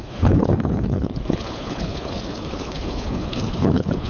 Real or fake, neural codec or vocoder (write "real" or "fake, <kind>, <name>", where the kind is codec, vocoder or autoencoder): fake, codec, HILCodec